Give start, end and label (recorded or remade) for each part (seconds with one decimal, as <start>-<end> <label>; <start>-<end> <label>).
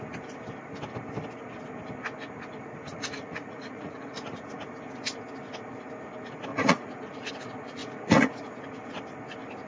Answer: 0.0-2.9 recorded; 2.9-4.6 remade; 4.6-6.5 recorded; 6.5-7.3 remade; 7.3-7.8 recorded; 7.8-8.6 remade; 8.6-9.7 recorded